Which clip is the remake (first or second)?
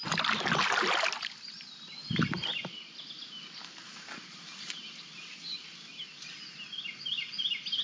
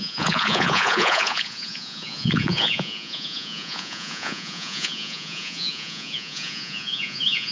second